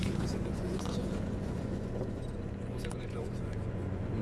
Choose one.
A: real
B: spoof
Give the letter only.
B